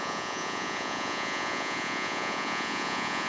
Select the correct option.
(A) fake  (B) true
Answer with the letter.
A